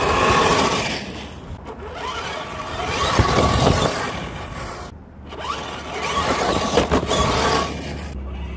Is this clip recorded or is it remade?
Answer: recorded